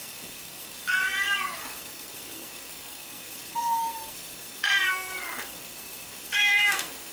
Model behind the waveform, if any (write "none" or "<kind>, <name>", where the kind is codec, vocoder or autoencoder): codec, SNAC